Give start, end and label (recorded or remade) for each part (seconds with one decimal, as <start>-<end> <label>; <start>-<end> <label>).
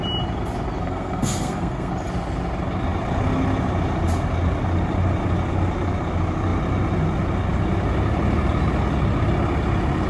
0.0-0.8 recorded; 0.8-1.9 remade; 1.9-10.1 recorded